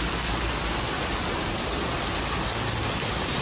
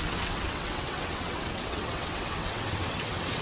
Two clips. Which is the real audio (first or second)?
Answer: first